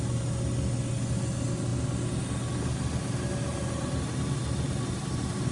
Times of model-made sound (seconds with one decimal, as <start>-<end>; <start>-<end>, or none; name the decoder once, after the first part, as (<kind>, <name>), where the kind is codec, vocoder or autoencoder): none